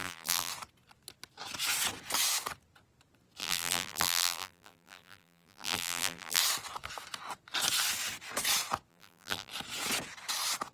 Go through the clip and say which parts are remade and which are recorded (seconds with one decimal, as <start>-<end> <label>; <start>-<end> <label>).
0.0-0.5 remade; 0.5-3.4 recorded; 3.4-6.4 remade; 6.4-8.9 recorded; 8.9-9.5 remade; 9.5-10.7 recorded